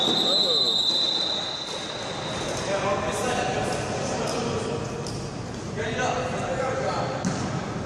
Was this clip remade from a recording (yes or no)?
no